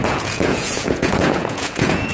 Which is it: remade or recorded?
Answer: remade